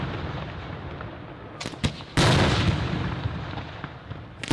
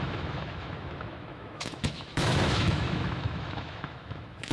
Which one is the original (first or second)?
first